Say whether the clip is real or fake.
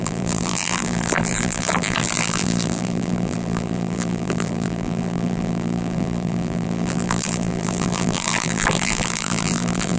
fake